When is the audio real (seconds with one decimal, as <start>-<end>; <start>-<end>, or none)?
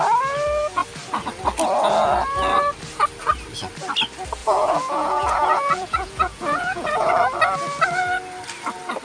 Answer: 0.0-4.4; 7.1-9.0